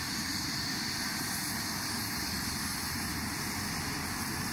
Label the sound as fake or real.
real